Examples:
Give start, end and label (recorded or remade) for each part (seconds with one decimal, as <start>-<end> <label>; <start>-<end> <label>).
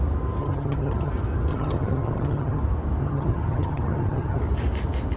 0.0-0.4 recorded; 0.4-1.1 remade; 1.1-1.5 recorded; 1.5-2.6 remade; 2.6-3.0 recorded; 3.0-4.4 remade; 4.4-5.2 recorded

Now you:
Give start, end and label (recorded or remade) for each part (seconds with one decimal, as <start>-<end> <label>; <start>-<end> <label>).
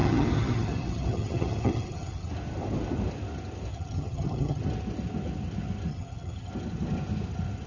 0.0-2.3 remade; 2.3-3.7 recorded; 3.7-4.6 remade; 4.6-5.9 recorded; 5.9-6.5 remade; 6.5-7.7 recorded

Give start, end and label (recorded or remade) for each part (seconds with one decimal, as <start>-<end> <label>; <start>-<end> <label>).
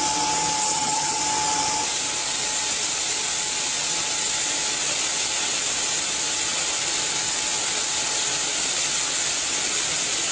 0.0-0.6 recorded; 0.6-1.2 remade; 1.2-10.3 recorded